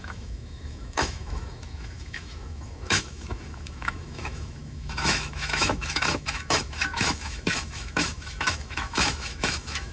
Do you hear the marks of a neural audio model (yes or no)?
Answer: yes